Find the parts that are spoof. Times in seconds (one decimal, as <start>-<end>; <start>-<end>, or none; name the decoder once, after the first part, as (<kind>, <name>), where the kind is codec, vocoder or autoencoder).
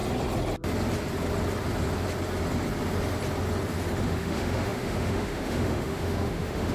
4.0-6.7 (autoencoder, DAC-VAE)